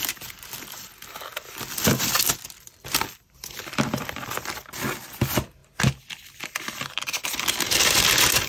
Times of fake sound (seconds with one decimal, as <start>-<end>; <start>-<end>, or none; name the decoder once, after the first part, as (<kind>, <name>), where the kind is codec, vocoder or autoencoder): none